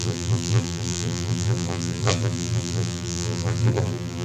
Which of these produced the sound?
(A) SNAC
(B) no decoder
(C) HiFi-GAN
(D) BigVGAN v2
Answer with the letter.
D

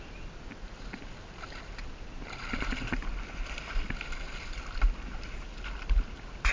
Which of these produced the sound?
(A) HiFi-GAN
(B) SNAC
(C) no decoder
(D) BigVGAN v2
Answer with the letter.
C